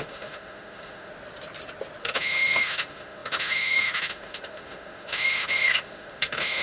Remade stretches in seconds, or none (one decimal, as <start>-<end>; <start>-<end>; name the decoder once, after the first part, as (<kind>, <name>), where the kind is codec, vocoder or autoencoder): 0.0-1.1 (autoencoder, DAC-VAE); 2.0-6.6

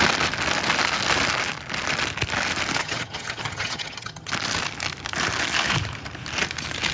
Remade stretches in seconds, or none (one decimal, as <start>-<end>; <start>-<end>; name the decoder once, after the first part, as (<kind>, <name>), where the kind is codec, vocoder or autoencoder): 2.8-4.3 (vocoder, HiFi-GAN)

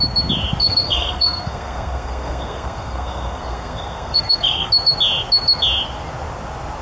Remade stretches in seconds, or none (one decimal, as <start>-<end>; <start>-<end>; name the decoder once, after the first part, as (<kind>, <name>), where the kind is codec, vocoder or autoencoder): 0.6-4.7 (codec, SNAC)

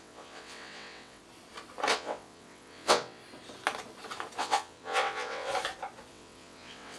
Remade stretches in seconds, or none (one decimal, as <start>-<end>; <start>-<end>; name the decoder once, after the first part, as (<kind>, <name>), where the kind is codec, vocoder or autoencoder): 0.0-1.2 (vocoder, WaveNeXt); 1.9-3.2; 4.4-5.5; 6.1-7.0

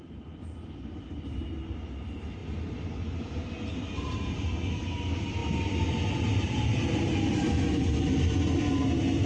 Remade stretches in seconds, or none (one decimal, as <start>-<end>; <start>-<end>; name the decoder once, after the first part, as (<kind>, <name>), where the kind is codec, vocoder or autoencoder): none

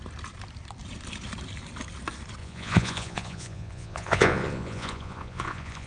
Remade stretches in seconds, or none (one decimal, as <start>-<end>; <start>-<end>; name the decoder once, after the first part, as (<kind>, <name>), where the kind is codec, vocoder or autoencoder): 2.4-5.9 (vocoder, Vocos)

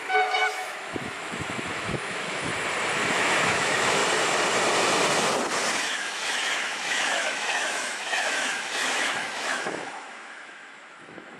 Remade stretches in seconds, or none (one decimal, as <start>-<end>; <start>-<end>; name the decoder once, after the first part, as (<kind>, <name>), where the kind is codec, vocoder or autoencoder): 0.0-2.5 (autoencoder, DAC-VAE); 3.1-4.0; 5.7-11.4

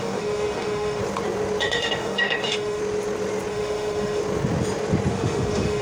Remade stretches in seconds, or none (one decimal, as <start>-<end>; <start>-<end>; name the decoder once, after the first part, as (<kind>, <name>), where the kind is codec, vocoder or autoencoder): 0.0-1.0 (autoencoder, DAC-VAE); 1.6-2.8; 3.5-4.2; 5.1-5.8